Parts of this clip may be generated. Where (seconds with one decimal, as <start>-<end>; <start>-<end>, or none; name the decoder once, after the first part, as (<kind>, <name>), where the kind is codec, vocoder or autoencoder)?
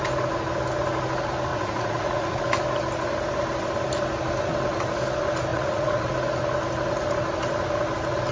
1.5-2.4 (vocoder, Vocos); 5.5-6.1